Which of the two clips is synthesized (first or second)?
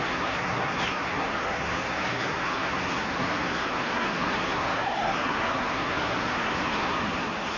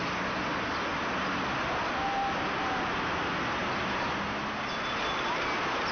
first